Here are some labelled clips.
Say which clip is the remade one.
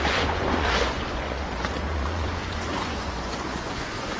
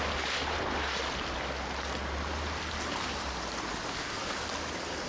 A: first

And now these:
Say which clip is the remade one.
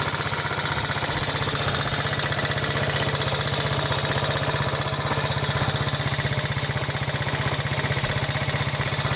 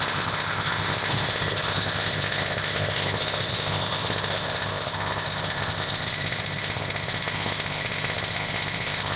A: second